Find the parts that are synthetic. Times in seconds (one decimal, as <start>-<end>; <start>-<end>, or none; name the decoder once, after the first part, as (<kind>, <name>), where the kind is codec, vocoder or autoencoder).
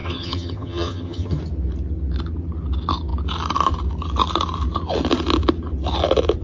0.0-1.4 (vocoder, HiFi-GAN)